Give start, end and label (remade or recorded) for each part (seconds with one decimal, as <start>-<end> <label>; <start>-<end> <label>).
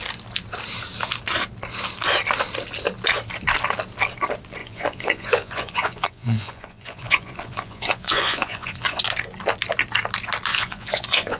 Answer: 0.0-4.6 recorded; 4.6-9.0 remade; 9.0-10.5 recorded; 10.5-11.4 remade